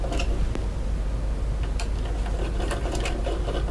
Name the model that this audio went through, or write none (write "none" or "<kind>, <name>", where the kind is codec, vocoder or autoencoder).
none